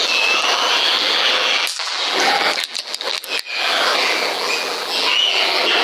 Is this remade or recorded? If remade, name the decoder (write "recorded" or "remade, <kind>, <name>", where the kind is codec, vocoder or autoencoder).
remade, vocoder, BigVGAN v2